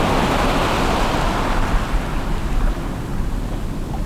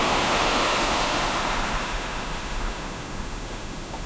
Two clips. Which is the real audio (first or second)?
first